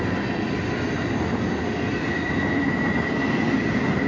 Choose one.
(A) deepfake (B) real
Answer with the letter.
B